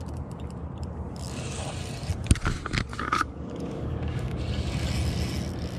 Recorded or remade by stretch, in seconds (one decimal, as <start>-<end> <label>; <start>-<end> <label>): 0.0-2.9 recorded; 2.9-4.4 remade; 4.4-5.8 recorded